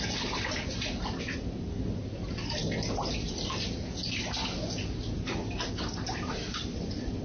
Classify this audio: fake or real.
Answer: real